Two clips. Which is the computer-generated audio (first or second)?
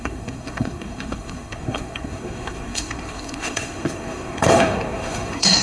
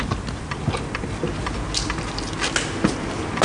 first